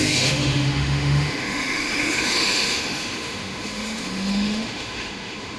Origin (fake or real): fake